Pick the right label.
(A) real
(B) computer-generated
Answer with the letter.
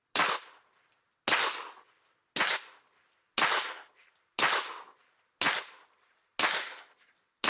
A